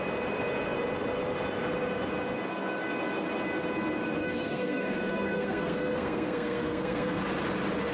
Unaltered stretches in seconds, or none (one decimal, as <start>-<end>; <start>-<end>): 0.0-4.2; 7.2-7.9

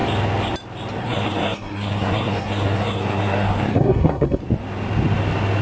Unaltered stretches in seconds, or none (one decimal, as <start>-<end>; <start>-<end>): 0.0-1.0; 4.4-5.6

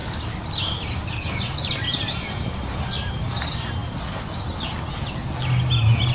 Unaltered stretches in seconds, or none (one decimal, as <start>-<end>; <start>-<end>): 0.0-6.1

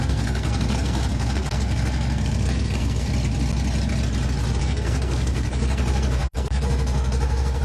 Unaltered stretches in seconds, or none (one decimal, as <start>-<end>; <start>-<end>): 3.1-4.6

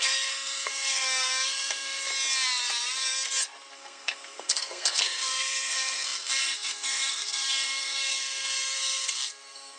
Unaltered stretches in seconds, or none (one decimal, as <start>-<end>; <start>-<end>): 2.1-3.7

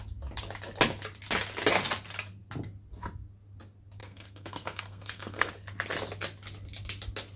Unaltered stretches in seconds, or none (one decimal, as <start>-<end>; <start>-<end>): 0.0-4.0; 5.5-7.4

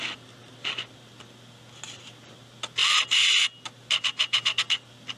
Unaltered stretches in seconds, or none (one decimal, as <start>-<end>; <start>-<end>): 0.0-5.2

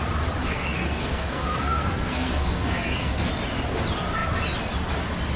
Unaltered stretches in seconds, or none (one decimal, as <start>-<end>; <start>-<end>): 0.0-0.4; 3.3-5.4